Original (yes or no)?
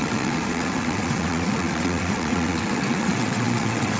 no